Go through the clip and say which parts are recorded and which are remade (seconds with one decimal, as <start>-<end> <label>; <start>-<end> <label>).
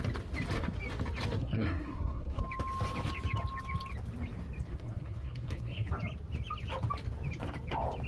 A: 0.0-1.4 recorded; 1.4-2.4 remade; 2.4-4.7 recorded; 4.7-5.9 remade; 5.9-8.1 recorded